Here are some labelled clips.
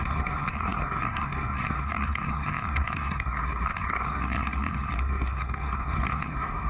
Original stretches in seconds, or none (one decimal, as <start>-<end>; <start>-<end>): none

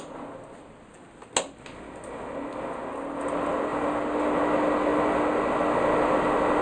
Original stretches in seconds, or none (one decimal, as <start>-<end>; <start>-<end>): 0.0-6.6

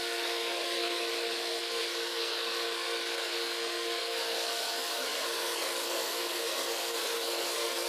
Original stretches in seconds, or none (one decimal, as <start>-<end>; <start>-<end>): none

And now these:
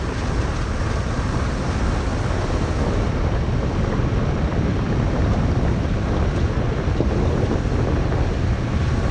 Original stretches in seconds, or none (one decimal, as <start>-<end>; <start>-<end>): 0.0-9.1

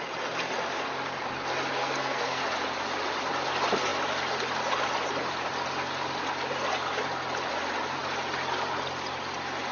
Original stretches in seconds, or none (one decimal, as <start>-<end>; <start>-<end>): 0.0-1.8; 2.4-9.7

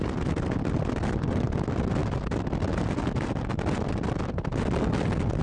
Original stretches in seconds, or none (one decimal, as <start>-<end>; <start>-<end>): 0.0-5.4

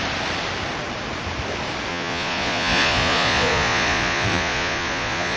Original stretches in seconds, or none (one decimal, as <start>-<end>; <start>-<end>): 0.0-1.9

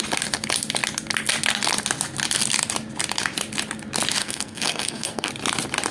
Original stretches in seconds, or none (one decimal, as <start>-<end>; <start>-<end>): 0.0-4.2; 5.3-5.9